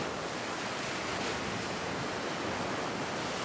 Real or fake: real